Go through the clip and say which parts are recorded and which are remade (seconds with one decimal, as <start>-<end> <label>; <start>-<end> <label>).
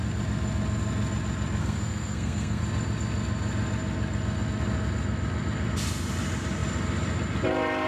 0.0-1.6 recorded; 1.6-2.6 remade; 2.6-7.9 recorded